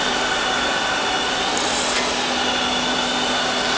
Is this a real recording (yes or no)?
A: yes